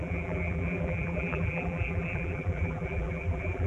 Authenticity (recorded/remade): remade